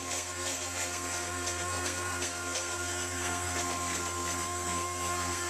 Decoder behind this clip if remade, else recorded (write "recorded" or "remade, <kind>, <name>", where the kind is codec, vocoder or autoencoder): remade, codec, SNAC